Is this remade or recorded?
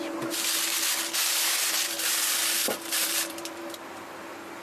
remade